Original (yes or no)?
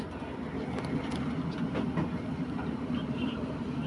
yes